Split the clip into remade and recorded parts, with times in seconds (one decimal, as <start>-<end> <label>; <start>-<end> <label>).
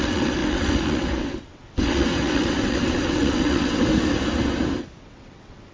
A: 0.0-3.9 remade; 3.9-5.0 recorded; 5.0-5.7 remade